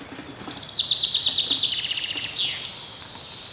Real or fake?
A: real